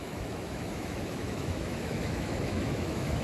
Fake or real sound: fake